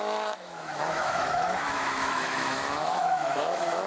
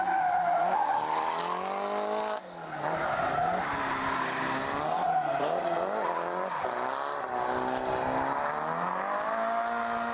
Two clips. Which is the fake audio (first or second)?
first